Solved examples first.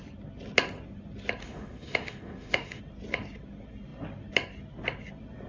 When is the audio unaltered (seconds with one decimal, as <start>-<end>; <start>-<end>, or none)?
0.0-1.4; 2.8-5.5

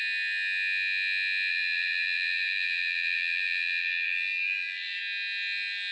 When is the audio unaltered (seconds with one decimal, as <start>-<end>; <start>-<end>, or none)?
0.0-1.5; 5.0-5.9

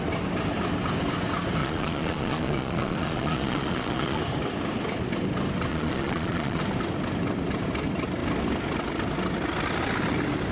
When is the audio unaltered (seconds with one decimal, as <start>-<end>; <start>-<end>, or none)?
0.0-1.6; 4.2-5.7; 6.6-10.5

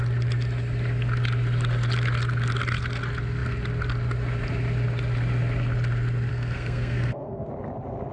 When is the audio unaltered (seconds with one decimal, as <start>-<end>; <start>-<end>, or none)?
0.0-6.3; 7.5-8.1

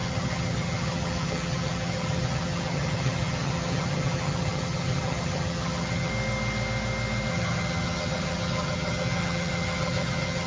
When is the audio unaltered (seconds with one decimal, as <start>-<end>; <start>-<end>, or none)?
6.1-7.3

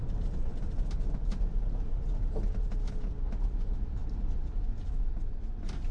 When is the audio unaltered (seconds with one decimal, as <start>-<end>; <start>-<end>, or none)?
0.0-5.9